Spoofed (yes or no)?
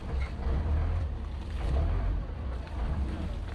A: yes